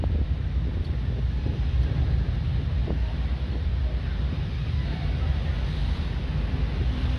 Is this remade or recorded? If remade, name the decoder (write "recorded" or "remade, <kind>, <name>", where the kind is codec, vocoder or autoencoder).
remade, vocoder, BigVGAN v2